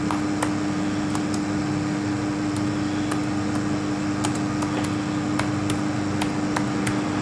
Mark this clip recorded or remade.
recorded